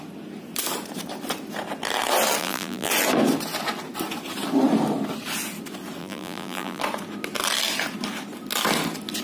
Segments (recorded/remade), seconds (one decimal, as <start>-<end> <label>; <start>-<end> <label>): 0.0-2.4 recorded; 2.4-2.9 remade; 2.9-6.0 recorded; 6.0-6.8 remade; 6.8-9.2 recorded